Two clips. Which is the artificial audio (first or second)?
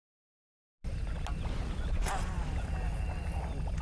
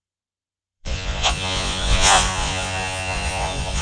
second